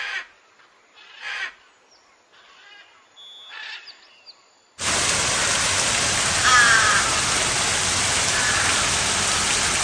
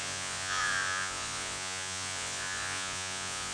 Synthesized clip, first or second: second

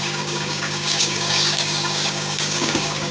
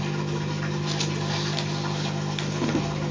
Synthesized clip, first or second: first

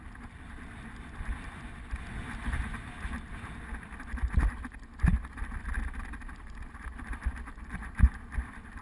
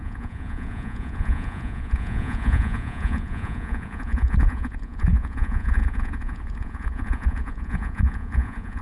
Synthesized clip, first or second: second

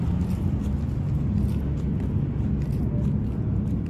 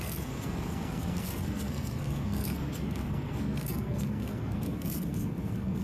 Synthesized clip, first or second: second